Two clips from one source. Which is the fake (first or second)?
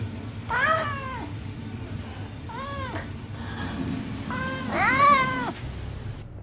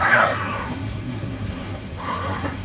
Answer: second